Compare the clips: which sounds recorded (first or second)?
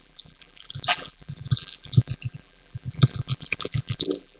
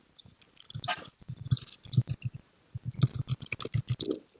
second